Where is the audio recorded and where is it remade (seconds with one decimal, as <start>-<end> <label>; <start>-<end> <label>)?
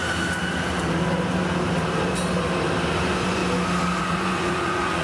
0.0-3.0 recorded; 3.0-3.4 remade; 3.4-4.0 recorded; 4.0-5.0 remade